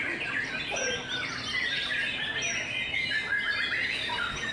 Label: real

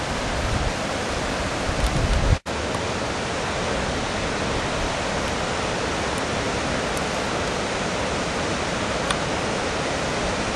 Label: real